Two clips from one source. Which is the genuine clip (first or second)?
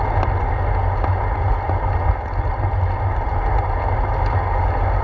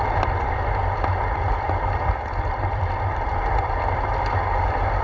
first